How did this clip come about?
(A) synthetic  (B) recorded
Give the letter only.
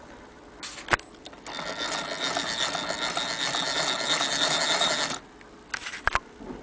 B